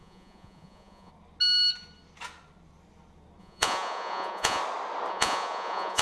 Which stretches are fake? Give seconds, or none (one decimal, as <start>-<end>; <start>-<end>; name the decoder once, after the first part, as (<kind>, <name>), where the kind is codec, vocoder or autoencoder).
0.0-1.1 (vocoder, Vocos); 3.4-4.6; 5.1-6.0